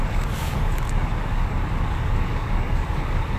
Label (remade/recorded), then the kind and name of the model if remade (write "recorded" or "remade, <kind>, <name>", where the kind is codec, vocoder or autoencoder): remade, codec, DAC